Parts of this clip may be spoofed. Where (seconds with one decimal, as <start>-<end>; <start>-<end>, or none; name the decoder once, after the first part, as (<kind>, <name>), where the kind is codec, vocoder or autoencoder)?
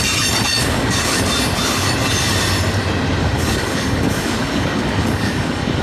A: 0.6-1.2 (codec, DAC); 3.2-5.8